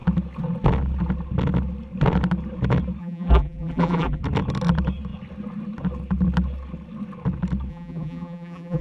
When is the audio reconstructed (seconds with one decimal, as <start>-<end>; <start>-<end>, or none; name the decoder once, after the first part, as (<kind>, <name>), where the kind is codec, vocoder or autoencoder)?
3.0-4.2 (vocoder, BigVGAN v2); 7.7-8.8